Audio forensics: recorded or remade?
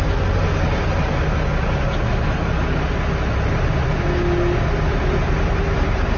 recorded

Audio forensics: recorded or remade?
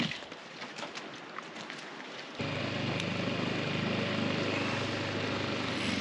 recorded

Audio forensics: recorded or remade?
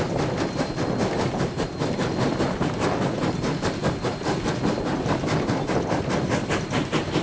recorded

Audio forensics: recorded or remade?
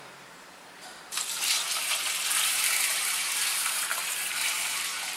remade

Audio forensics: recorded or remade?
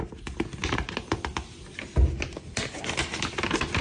recorded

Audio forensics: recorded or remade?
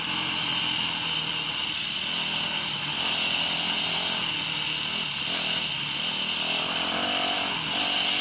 recorded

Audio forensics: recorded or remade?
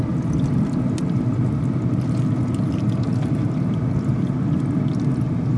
recorded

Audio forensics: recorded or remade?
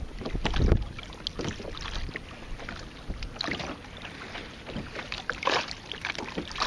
recorded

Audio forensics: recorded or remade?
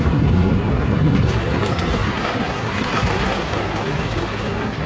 remade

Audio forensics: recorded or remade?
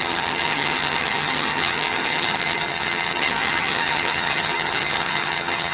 remade